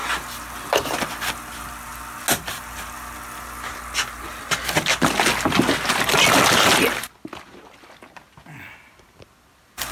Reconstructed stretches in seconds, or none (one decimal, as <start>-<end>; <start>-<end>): none